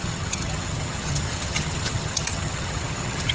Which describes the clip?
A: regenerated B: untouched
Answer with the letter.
A